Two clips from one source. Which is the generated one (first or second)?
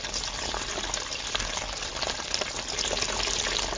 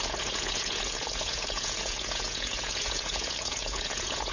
second